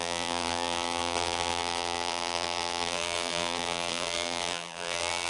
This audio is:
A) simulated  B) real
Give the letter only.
A